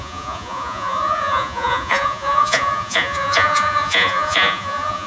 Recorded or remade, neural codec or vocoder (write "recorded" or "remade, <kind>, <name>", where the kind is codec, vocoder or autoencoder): remade, vocoder, Vocos